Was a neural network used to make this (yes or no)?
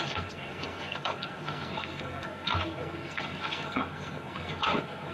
yes